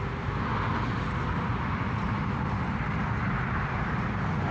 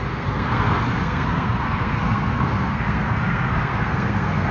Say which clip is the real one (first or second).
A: first